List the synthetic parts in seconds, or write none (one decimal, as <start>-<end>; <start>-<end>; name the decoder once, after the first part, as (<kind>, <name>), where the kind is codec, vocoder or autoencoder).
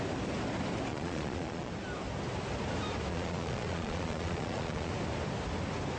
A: 0.9-1.7 (vocoder, Vocos); 3.1-4.9